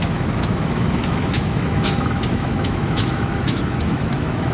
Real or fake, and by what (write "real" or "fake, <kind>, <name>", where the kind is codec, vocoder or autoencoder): fake, autoencoder, DAC-VAE